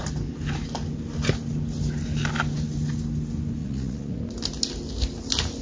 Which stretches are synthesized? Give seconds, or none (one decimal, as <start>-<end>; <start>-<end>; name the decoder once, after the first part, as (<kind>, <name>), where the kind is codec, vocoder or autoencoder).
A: 3.6-4.2 (vocoder, Vocos)